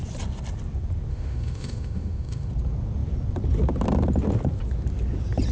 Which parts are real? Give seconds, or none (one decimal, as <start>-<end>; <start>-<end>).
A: 0.0-1.1; 2.5-5.5